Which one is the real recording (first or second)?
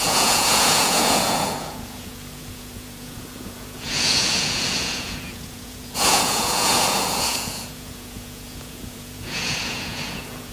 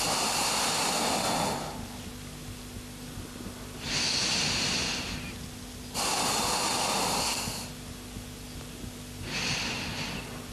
second